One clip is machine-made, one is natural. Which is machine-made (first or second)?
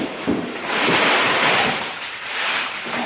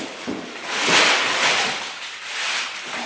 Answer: first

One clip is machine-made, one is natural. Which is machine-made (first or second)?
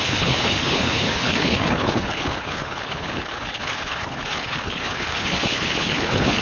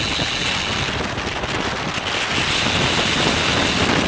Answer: first